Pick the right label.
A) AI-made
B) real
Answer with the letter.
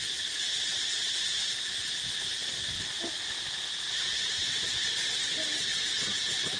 B